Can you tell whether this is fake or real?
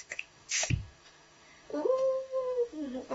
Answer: fake